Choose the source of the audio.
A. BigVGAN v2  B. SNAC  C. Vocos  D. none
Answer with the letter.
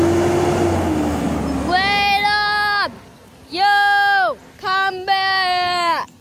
D